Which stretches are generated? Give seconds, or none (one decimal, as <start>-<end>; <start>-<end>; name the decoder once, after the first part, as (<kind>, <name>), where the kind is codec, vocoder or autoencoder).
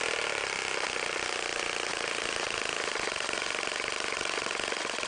none